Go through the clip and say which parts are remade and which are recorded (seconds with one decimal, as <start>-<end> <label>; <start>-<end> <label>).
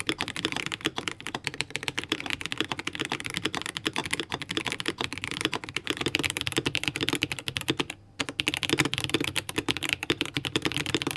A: 0.0-8.2 remade; 8.2-8.9 recorded; 8.9-11.2 remade